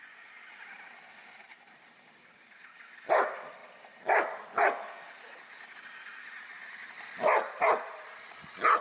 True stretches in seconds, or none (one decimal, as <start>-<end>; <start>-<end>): 0.0-8.8